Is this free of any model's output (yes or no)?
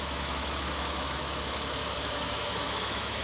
no